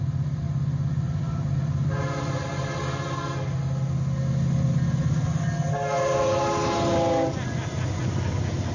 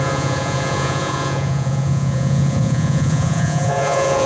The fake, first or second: second